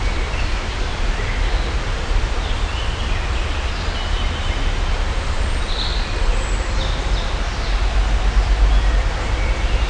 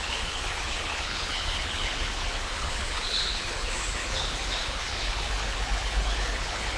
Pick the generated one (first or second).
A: second